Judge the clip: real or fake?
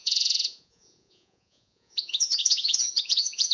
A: fake